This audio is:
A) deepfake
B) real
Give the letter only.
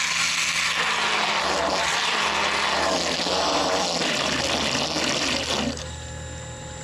B